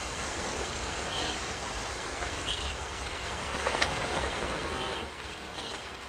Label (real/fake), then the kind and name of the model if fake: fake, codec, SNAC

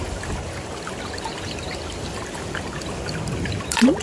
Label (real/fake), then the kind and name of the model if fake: real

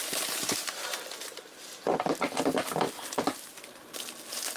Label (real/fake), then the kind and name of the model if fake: real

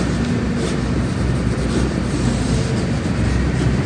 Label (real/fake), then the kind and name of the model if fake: real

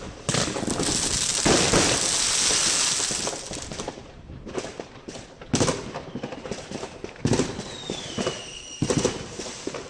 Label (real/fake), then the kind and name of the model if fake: real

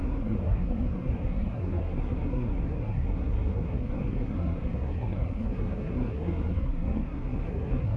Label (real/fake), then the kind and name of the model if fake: fake, codec, SNAC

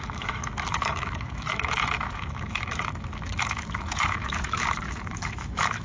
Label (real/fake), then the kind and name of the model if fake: fake, autoencoder, DAC-VAE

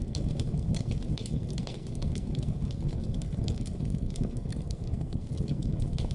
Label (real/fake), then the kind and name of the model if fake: fake, codec, SNAC